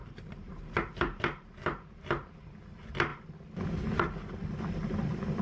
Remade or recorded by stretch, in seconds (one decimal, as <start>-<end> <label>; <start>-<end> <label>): 0.0-2.3 remade; 2.3-5.4 recorded